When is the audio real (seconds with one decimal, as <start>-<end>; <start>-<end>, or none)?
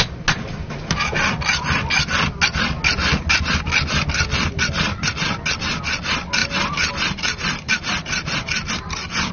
0.0-9.3